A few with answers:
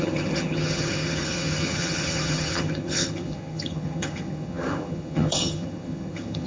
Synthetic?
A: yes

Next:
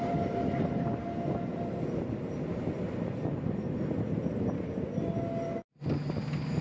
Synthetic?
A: no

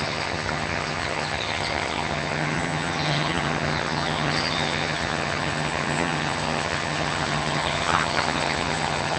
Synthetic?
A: yes